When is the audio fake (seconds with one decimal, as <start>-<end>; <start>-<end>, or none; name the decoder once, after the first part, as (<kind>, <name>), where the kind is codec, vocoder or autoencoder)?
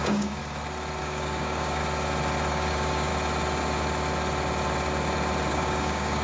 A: 0.0-0.4 (codec, DAC); 1.0-1.8; 2.5-3.1; 5.5-6.2